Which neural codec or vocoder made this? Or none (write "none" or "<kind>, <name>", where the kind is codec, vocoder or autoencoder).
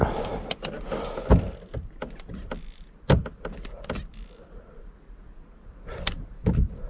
none